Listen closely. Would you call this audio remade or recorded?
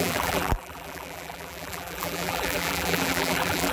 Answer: remade